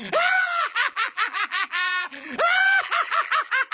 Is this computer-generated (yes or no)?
yes